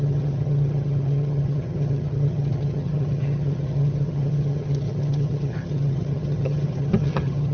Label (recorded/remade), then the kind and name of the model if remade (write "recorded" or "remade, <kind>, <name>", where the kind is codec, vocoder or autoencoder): remade, vocoder, HiFi-GAN